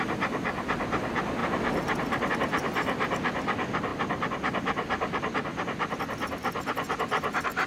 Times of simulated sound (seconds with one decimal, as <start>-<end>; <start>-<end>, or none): 1.4-2.3